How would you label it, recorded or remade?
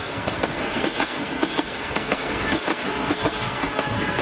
remade